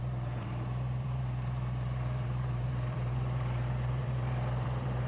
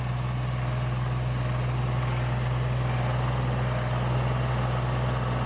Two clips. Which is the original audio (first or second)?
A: second